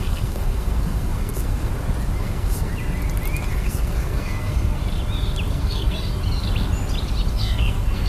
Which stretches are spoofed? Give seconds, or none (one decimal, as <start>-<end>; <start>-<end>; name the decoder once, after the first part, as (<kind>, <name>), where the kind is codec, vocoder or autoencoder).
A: 0.0-1.7 (codec, SNAC); 2.2-2.7; 3.5-4.8; 5.5-6.1; 7.3-8.1

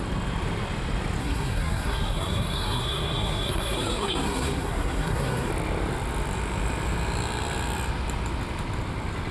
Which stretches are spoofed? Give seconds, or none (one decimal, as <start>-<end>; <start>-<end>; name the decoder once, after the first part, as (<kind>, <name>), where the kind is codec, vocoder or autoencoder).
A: 1.2-5.5 (codec, SNAC)

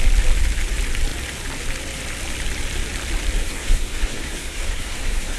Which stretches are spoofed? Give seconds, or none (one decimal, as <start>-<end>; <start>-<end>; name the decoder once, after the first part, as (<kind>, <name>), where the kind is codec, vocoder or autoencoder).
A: 3.4-5.4 (codec, SNAC)

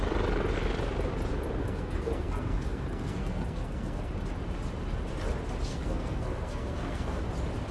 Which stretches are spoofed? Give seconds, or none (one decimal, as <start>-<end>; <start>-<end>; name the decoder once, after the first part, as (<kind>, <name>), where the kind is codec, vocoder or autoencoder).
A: 1.6-4.1 (codec, SNAC); 5.7-7.2